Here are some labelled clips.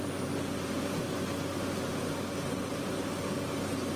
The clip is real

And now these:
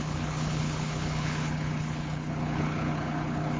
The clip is fake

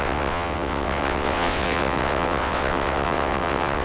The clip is fake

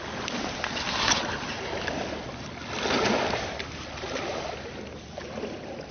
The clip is real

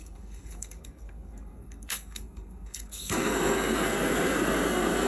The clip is fake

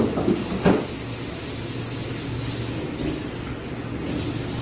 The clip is real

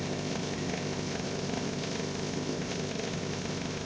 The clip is fake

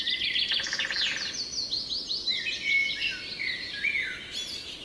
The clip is real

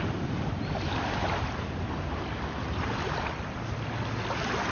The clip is real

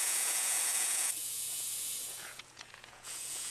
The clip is fake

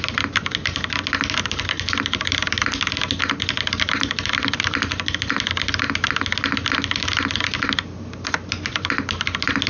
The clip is real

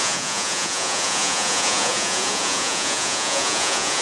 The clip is fake